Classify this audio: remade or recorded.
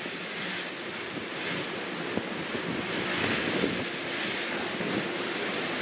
recorded